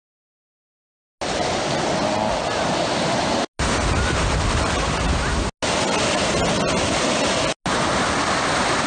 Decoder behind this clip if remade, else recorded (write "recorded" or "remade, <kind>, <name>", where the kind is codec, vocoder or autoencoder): recorded